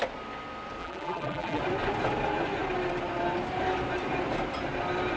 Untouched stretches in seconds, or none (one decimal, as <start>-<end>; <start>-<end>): 0.0-0.8; 1.6-5.2